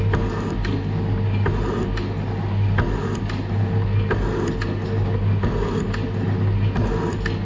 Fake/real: real